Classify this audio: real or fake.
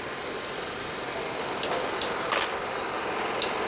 real